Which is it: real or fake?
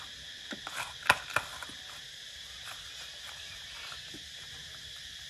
real